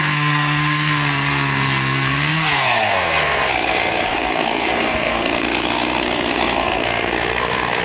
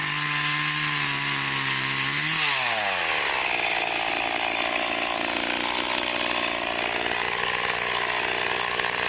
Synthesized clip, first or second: first